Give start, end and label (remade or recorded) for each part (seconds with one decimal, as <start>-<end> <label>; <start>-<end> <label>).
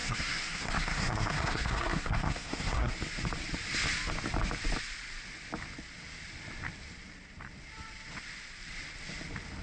0.0-2.9 remade; 2.9-9.6 recorded